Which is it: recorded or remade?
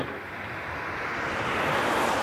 recorded